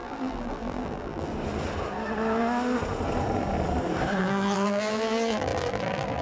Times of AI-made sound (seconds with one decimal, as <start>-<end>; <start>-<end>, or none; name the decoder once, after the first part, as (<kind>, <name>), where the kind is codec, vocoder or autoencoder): 0.0-1.3 (vocoder, BigVGAN v2); 4.2-6.2

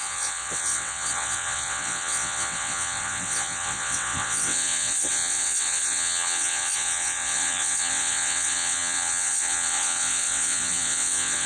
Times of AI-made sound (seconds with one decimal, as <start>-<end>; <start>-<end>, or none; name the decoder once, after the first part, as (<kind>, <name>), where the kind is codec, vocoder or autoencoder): 0.0-11.5 (vocoder, WaveNeXt)

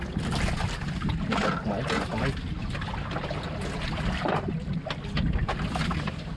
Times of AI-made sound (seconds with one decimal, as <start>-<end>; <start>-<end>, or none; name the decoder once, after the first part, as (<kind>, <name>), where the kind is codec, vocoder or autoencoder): none

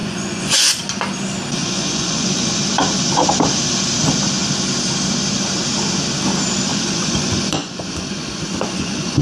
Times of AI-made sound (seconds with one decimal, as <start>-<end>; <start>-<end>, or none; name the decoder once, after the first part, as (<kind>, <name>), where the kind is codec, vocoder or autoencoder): 0.0-0.8 (vocoder, Vocos); 1.6-2.6; 6.7-9.2

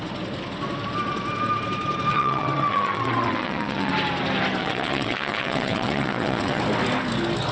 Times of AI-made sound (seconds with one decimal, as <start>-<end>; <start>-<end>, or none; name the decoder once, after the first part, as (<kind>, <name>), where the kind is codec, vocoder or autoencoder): 2.1-3.9 (vocoder, WaveNeXt); 4.6-6.6

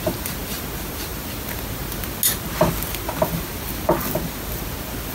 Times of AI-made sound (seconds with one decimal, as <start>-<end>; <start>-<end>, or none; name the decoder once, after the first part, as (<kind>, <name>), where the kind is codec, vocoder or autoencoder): none